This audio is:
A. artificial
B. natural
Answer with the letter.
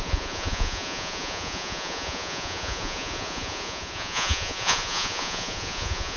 A